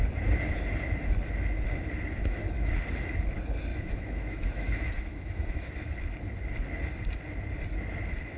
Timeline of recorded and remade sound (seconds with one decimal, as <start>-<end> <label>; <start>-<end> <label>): 0.0-2.2 recorded; 2.2-2.7 remade; 2.7-3.7 recorded; 3.7-5.7 remade; 5.7-8.4 recorded